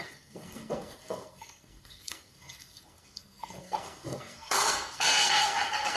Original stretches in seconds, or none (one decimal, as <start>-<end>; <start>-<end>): none